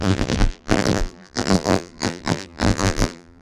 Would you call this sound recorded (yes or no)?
no